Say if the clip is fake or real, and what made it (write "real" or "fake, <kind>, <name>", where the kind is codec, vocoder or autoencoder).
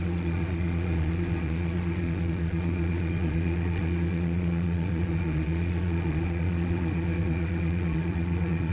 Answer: fake, vocoder, Vocos